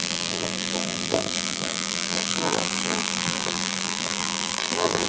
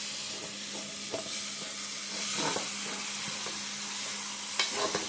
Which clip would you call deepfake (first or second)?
first